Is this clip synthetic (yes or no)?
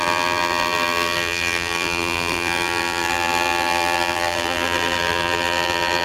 yes